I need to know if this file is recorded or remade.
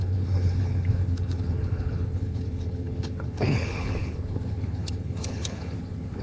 remade